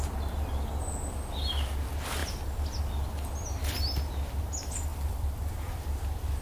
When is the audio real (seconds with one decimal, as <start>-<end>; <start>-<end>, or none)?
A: 0.0-2.2; 2.8-4.9